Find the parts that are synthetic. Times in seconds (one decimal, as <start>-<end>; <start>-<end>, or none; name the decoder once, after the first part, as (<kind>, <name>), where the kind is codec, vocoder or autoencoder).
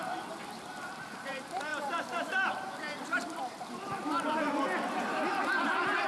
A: 0.0-6.1 (vocoder, BigVGAN v2)